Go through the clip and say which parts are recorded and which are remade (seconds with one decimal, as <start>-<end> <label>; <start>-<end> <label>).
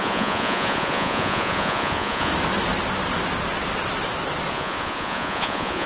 0.0-2.3 remade; 2.3-4.5 recorded; 4.5-5.9 remade